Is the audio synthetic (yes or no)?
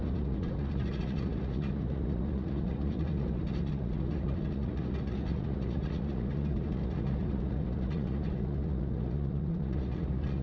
yes